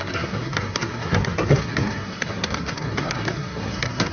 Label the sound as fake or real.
fake